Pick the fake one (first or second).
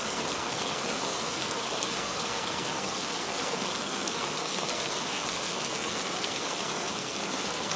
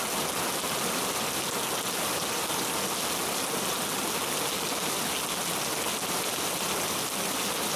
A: first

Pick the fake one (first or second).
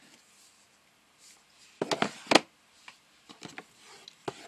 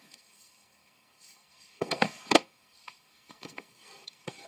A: second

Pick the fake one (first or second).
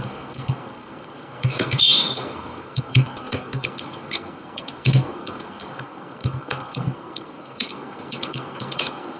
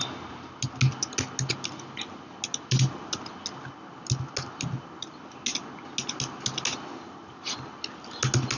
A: first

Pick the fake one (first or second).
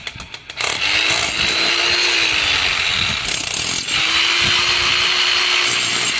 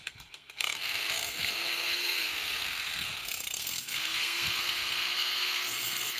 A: second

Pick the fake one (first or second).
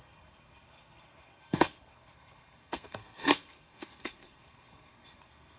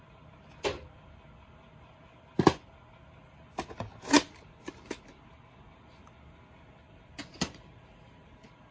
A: first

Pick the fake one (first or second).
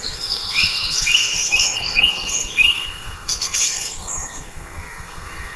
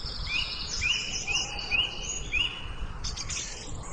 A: first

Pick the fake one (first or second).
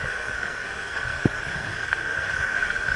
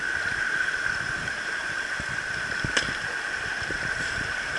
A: first